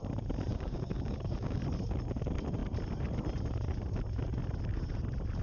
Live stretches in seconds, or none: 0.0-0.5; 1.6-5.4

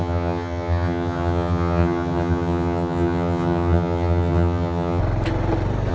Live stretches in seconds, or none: 5.0-5.9

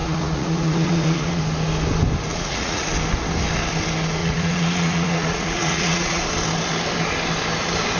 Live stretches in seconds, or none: 1.4-2.3; 2.8-4.2; 6.2-8.0

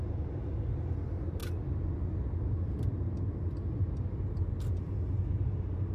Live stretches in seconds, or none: 0.0-5.9

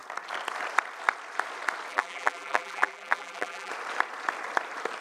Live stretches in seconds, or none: 0.0-1.9; 3.7-5.0

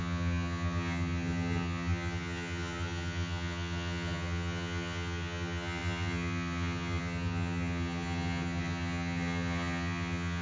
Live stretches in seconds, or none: none